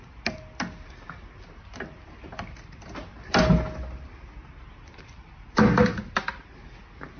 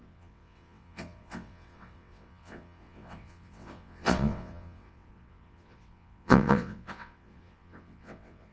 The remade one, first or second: second